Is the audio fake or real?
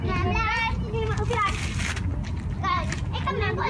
real